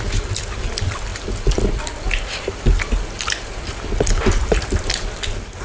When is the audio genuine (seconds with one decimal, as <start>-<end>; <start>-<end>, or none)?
0.0-5.6